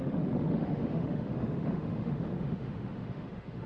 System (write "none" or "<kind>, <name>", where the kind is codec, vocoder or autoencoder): autoencoder, DAC-VAE